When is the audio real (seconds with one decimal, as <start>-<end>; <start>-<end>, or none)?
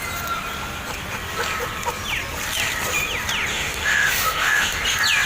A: 0.0-3.5; 4.8-5.3